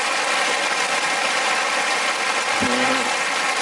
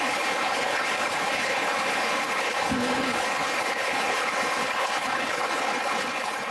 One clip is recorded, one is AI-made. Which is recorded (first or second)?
first